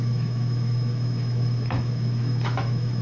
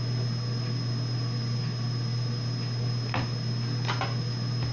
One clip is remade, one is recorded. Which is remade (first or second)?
first